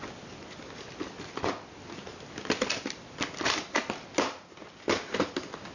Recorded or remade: recorded